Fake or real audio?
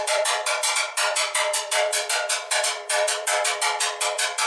fake